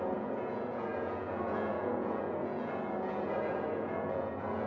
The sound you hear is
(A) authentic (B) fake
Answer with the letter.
B